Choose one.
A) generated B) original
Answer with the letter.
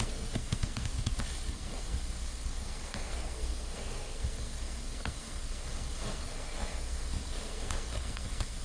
A